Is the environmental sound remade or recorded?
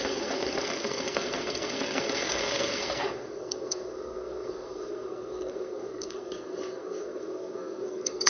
remade